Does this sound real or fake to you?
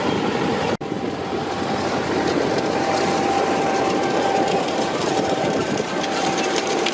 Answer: fake